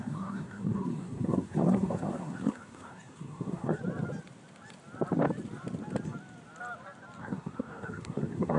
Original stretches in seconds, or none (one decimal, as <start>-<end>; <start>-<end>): 3.8-7.2